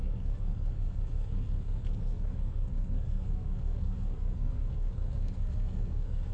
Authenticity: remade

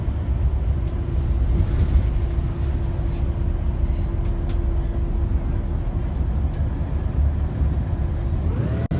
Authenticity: recorded